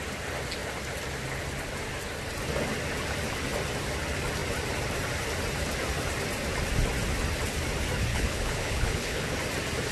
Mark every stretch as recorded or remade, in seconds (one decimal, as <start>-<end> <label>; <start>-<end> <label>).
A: 0.0-8.1 recorded; 8.1-9.3 remade; 9.3-9.9 recorded